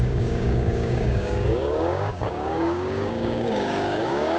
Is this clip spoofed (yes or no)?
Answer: yes